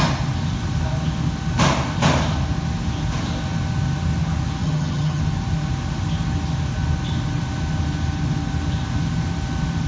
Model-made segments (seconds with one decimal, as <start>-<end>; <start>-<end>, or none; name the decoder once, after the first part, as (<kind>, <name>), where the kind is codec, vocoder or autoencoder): 4.6-5.2 (vocoder, HiFi-GAN)